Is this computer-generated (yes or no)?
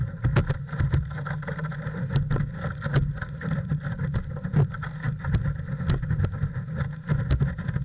no